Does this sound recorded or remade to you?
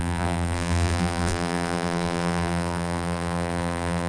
remade